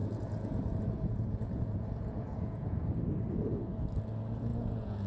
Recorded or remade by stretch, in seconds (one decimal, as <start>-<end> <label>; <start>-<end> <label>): 0.0-3.0 remade; 3.0-4.5 recorded; 4.5-5.1 remade